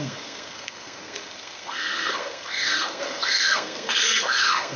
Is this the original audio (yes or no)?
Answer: no